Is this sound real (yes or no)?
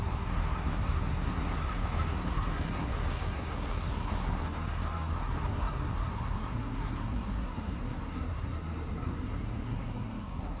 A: no